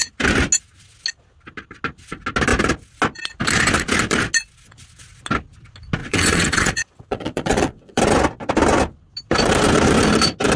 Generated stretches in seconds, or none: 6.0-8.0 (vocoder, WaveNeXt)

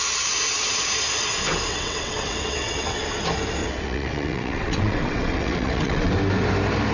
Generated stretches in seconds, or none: 1.7-3.0 (vocoder, WaveNeXt); 3.6-6.1

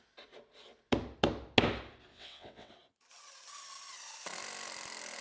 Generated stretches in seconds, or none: 2.1-2.7 (vocoder, WaveNeXt)

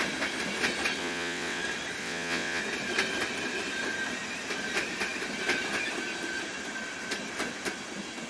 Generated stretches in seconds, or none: 1.0-1.6 (vocoder, WaveNeXt); 2.0-2.6

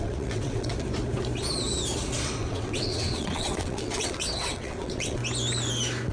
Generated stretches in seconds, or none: 0.0-0.7 (vocoder, WaveNeXt); 2.4-5.2

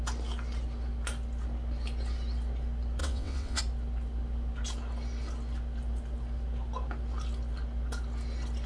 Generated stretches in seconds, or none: 3.0-3.6 (vocoder, WaveNeXt)